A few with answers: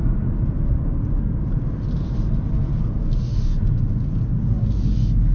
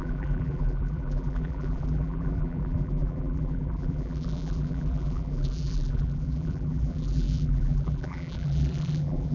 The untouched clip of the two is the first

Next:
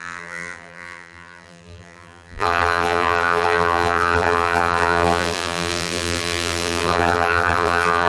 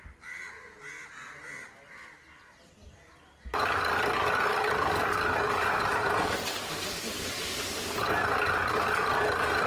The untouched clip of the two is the second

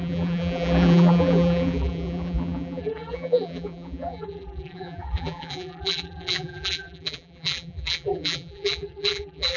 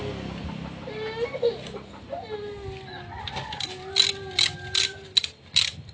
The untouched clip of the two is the second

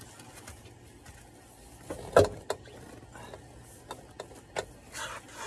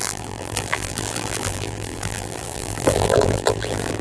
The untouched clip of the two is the first